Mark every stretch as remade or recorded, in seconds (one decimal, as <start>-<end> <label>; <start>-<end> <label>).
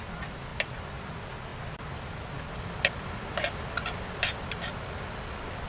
0.0-5.7 recorded